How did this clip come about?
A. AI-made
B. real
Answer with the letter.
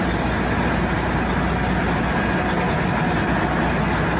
B